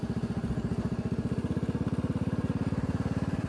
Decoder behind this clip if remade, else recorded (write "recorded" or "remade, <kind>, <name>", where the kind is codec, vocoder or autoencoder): recorded